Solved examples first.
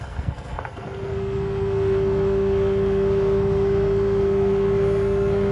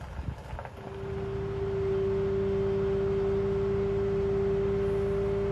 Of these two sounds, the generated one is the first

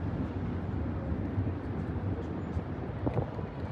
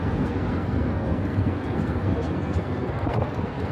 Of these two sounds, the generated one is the second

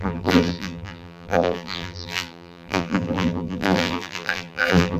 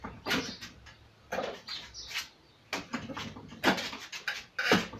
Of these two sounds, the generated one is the first